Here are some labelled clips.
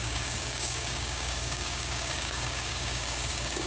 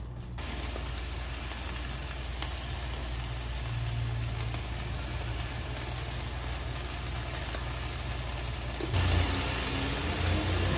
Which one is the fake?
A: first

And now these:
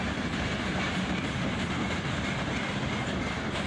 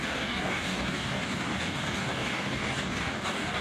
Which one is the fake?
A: second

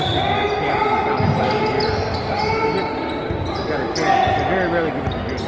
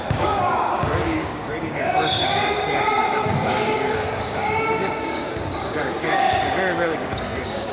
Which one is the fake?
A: second